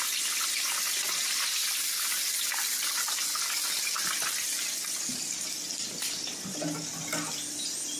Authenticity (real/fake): real